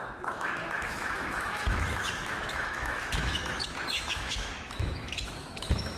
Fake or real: fake